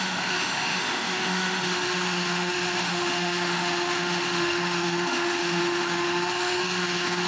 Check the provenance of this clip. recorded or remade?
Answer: remade